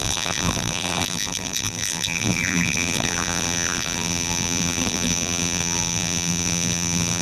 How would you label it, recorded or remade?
remade